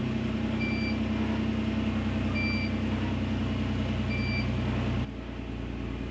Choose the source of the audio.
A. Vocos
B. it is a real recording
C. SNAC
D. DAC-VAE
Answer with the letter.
B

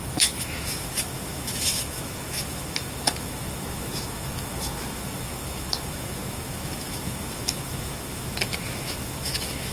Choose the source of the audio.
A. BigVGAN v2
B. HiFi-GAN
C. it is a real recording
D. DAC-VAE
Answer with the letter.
D